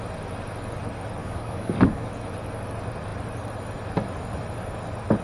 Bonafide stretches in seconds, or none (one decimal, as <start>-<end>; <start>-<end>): 0.0-1.2; 2.1-5.2